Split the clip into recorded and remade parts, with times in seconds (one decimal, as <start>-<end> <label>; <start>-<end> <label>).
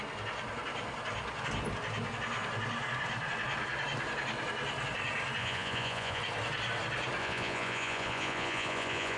0.0-5.4 recorded; 5.4-6.2 remade; 6.2-7.2 recorded; 7.2-9.2 remade